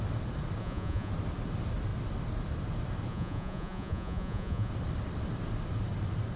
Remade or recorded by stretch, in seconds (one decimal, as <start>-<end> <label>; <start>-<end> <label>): 0.0-0.6 recorded; 0.6-1.1 remade; 1.1-3.1 recorded; 3.1-4.7 remade; 4.7-6.4 recorded